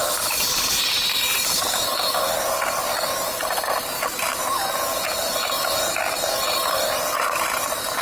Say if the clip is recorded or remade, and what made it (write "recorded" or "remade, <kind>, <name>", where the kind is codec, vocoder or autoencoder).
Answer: remade, vocoder, BigVGAN v2